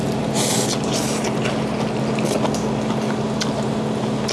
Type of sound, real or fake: real